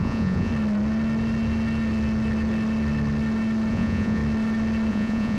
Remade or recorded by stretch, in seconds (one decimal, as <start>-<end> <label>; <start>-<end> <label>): 0.0-0.5 remade; 0.5-3.7 recorded; 3.7-4.2 remade; 4.2-4.9 recorded; 4.9-5.4 remade